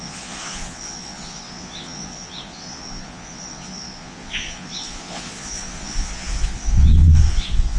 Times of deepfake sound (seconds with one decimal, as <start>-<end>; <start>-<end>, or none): 0.0-7.8